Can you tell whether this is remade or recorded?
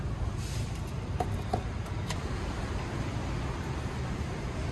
recorded